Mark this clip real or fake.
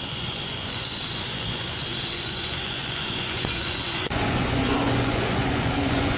fake